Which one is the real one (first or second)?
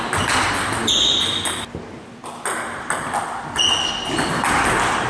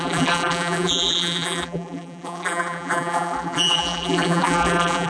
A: first